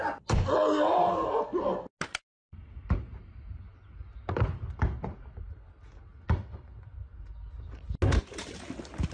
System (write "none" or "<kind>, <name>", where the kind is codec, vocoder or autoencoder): none